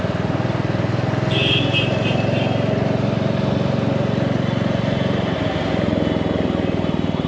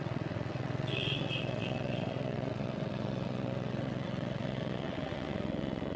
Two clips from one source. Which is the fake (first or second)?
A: second